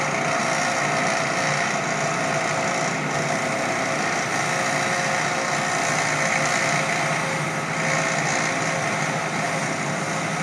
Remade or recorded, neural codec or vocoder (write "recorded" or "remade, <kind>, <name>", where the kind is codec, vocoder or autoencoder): recorded